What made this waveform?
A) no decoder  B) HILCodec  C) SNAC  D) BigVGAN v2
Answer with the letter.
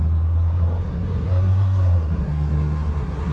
C